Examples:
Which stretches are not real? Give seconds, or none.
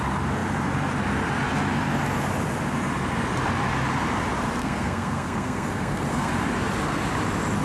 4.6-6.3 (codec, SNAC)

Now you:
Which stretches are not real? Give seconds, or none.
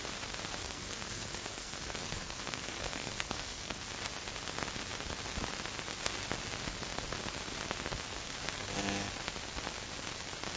0.6-3.9 (codec, SNAC)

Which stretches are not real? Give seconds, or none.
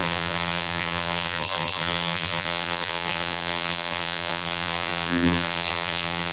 0.0-6.3 (vocoder, BigVGAN v2)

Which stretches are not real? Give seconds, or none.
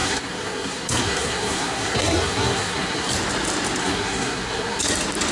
0.0-3.1 (codec, SNAC); 3.8-4.8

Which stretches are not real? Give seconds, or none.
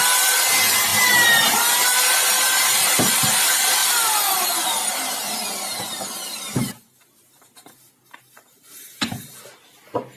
none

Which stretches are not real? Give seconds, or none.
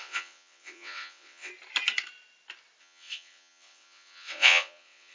0.0-1.5 (vocoder, WaveNeXt); 2.8-5.1